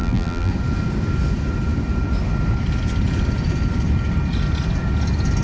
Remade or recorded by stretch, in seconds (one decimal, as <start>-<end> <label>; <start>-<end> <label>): 0.0-0.5 remade; 0.5-5.4 recorded